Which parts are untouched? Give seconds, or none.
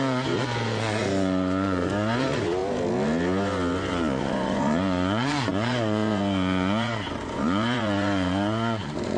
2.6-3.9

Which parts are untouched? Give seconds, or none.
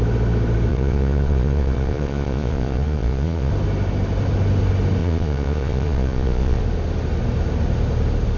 0.0-0.7; 3.5-5.0; 6.6-8.4